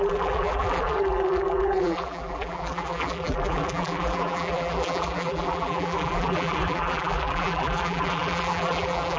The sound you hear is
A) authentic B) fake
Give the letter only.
B